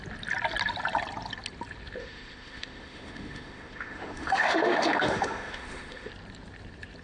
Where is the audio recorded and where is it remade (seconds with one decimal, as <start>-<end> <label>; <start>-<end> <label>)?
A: 0.0-2.0 recorded; 2.0-6.1 remade; 6.1-7.0 recorded